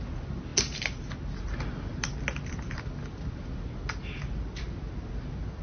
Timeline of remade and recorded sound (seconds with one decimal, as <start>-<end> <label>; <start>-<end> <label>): 0.0-5.6 recorded